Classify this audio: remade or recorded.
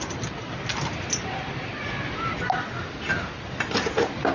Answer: recorded